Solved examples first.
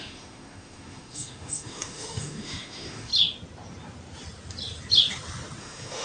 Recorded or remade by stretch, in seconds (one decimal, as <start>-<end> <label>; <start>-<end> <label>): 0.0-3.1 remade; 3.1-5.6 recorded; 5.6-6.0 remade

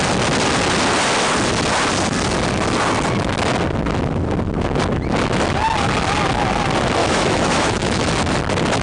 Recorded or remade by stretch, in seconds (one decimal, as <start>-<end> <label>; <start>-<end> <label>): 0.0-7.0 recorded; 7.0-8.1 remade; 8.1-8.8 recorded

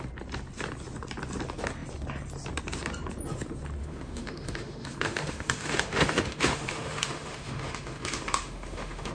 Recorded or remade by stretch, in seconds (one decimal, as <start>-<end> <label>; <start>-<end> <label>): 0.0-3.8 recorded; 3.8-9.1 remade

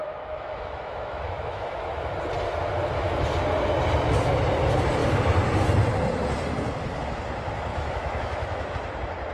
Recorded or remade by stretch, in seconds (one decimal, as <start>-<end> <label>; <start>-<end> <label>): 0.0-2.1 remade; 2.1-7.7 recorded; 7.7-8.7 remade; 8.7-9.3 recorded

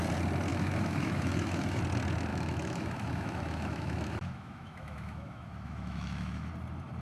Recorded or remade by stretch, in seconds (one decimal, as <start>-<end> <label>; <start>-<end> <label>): 0.0-0.5 recorded; 0.5-1.8 remade; 1.8-2.3 recorded; 2.3-6.5 remade; 6.5-7.0 recorded